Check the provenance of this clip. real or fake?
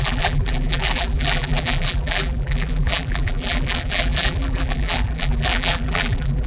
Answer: fake